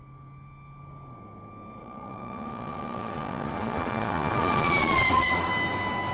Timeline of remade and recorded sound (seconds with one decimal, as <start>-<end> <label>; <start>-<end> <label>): 0.0-1.8 recorded; 1.8-5.5 remade; 5.5-6.1 recorded